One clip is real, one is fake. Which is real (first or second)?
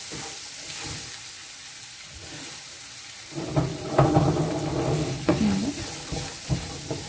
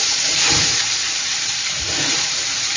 first